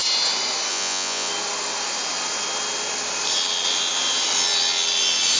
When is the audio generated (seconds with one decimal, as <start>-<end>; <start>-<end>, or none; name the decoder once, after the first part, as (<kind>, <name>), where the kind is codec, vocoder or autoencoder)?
0.7-1.3 (vocoder, Vocos)